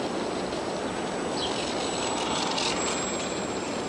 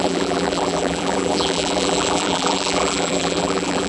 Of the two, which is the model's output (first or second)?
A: second